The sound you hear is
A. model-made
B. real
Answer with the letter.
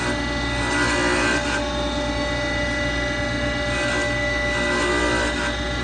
B